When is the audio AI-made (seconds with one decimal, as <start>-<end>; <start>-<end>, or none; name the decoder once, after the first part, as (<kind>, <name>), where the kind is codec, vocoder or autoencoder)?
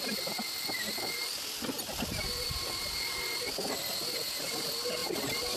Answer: 1.2-4.6 (vocoder, BigVGAN v2); 5.0-5.6